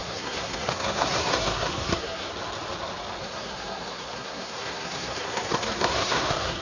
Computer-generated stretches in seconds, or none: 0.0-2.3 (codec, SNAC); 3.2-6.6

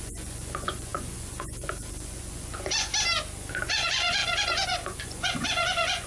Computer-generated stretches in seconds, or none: 0.0-2.9 (vocoder, Vocos); 3.5-6.1

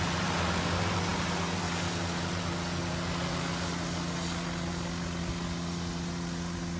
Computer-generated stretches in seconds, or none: none

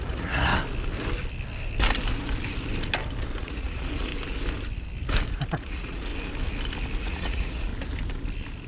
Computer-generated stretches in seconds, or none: 0.0-0.5 (vocoder, Vocos); 3.4-4.1; 5.5-6.1; 7.0-7.7

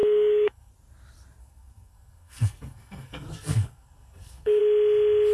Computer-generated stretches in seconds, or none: 0.0-0.7 (codec, SNAC); 1.4-4.6

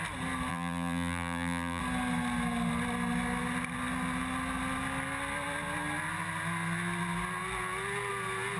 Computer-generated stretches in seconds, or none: 0.5-1.8 (vocoder, BigVGAN v2)